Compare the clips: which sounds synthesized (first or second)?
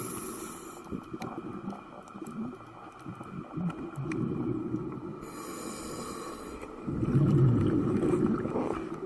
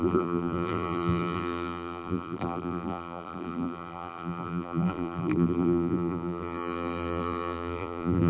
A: second